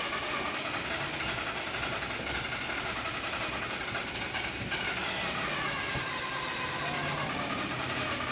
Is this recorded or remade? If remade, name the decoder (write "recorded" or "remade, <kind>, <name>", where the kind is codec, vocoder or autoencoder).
recorded